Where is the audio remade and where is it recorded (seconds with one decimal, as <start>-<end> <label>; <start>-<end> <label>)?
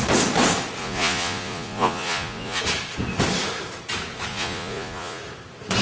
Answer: 0.0-0.8 recorded; 0.8-2.6 remade; 2.6-4.3 recorded; 4.3-5.2 remade; 5.2-5.8 recorded